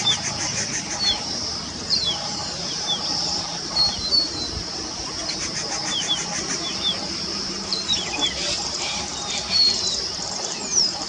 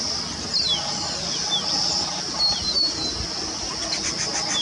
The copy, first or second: first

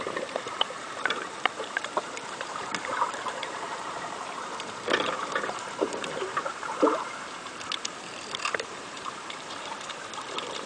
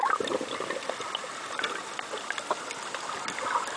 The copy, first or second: first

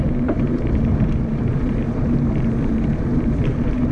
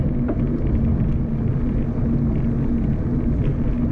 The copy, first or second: first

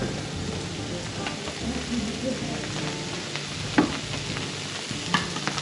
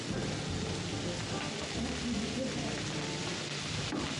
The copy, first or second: second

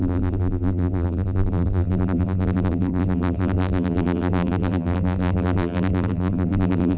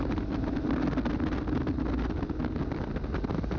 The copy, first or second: first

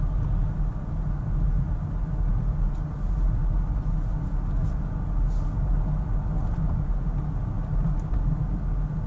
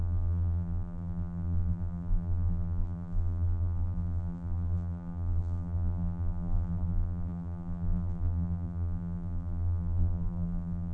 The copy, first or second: second